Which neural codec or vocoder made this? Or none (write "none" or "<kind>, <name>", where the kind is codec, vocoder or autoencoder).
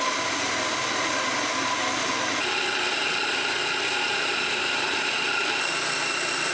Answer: none